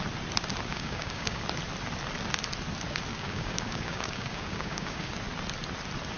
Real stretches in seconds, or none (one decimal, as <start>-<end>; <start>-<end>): 0.0-0.7; 1.4-3.1; 5.1-6.2